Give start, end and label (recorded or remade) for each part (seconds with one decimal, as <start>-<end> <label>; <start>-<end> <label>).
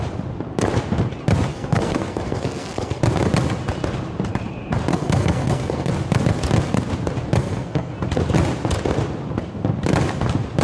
0.0-1.5 recorded; 1.5-3.0 remade; 3.0-4.9 recorded; 4.9-5.9 remade; 5.9-7.4 recorded; 7.4-7.9 remade; 7.9-10.6 recorded